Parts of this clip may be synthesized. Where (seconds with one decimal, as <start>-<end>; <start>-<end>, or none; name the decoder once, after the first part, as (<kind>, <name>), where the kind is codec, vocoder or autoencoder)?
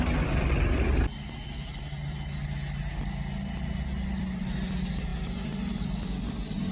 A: none